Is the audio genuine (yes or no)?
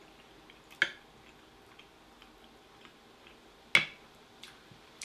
yes